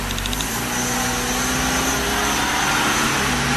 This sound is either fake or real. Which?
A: real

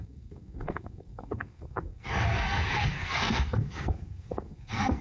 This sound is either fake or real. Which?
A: fake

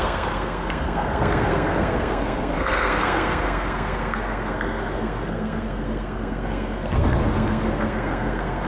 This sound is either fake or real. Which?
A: fake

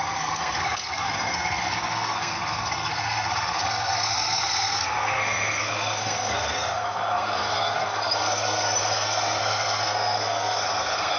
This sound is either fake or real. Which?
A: fake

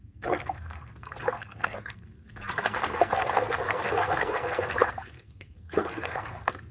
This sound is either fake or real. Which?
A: fake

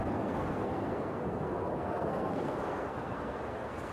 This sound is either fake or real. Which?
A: fake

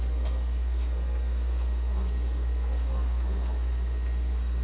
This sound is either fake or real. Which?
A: fake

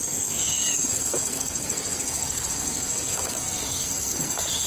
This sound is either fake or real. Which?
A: fake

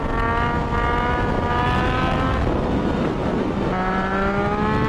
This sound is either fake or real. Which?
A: real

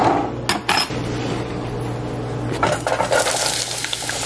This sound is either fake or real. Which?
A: real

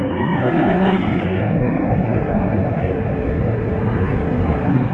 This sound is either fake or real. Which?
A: fake